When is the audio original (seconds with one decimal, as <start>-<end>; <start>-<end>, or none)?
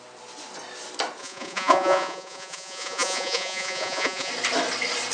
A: 0.0-1.2; 4.3-5.1